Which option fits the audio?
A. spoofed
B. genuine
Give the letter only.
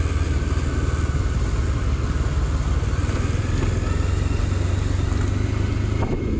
B